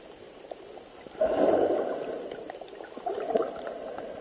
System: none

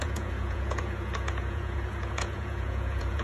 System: vocoder, Vocos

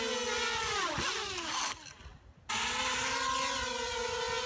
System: none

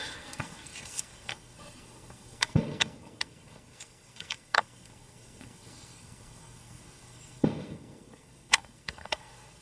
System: codec, SNAC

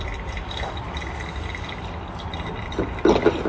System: none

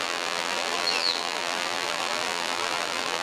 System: vocoder, BigVGAN v2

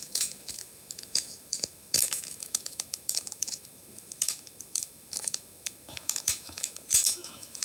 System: autoencoder, DAC-VAE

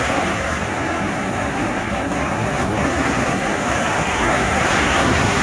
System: codec, SNAC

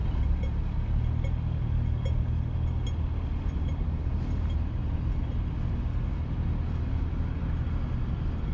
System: none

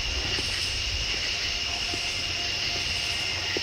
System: none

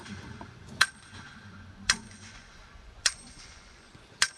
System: vocoder, Vocos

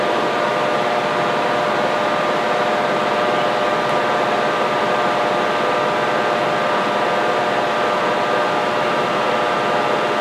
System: none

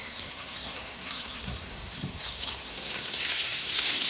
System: codec, SNAC